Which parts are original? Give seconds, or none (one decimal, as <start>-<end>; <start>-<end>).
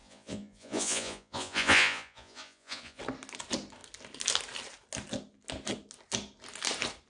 3.0-7.1